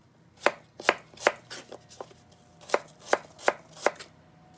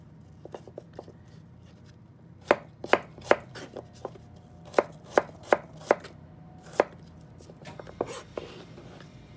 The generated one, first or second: second